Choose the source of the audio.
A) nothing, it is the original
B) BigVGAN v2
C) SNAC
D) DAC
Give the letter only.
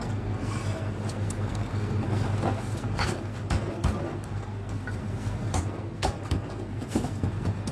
C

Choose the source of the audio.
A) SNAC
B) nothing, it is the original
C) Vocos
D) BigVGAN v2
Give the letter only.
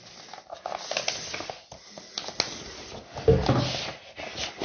B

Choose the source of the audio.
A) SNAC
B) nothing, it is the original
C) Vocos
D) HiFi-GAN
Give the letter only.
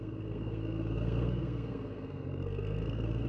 A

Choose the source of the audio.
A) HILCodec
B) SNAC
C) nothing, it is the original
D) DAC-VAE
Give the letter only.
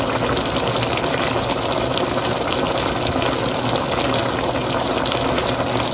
C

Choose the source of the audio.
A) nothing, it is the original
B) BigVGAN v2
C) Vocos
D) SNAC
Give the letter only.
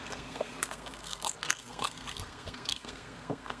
D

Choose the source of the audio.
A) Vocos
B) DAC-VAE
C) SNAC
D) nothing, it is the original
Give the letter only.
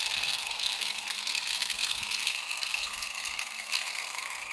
C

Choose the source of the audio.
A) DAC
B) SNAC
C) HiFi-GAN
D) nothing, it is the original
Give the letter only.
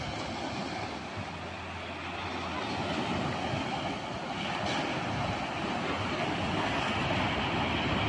D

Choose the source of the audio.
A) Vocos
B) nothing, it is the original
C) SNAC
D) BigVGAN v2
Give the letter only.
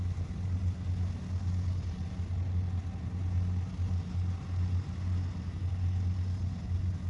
B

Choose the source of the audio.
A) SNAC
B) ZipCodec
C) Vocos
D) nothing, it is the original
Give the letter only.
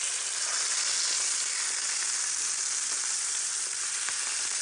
D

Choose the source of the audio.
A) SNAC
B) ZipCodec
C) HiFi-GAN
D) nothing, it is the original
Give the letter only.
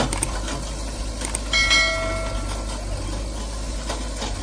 D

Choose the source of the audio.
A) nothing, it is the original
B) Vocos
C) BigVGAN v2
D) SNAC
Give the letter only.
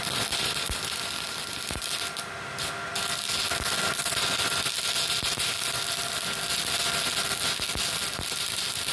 A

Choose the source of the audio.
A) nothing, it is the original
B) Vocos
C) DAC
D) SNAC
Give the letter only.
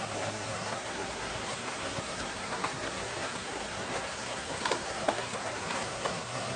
D